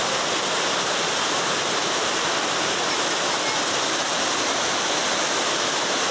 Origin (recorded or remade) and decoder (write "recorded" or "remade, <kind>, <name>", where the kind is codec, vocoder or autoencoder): recorded